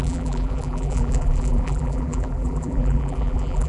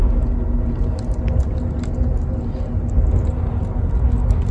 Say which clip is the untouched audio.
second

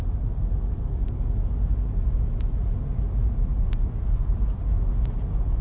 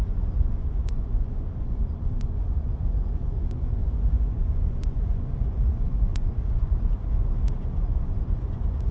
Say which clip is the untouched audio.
first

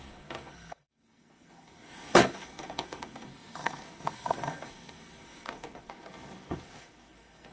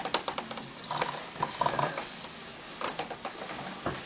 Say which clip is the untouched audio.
second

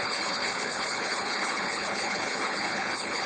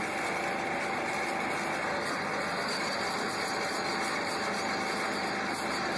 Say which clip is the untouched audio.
second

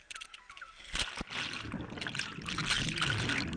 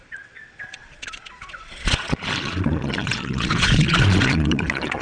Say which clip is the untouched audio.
first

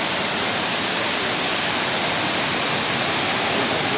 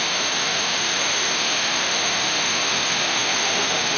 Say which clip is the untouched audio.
first